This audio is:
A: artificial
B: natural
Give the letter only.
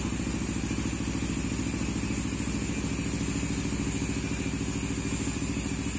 B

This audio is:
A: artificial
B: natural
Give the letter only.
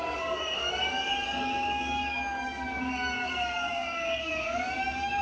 A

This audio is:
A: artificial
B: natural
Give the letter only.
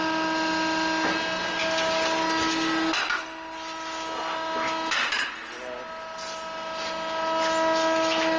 B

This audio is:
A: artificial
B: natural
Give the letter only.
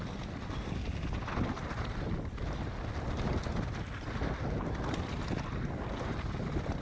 B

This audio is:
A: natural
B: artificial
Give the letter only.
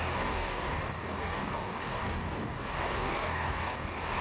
B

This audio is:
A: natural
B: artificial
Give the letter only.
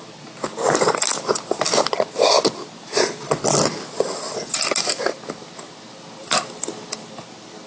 A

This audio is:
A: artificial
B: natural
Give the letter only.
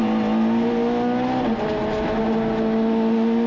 B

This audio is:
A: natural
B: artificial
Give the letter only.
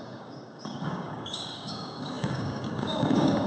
B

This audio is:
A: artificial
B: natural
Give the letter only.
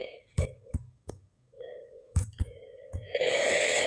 A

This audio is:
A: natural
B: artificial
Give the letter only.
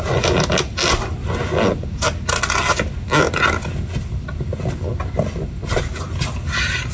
A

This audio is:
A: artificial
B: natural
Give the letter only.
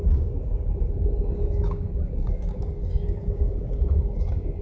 A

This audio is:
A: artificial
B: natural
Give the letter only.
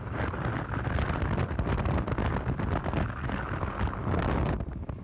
B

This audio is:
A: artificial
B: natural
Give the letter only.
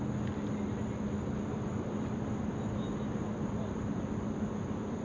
B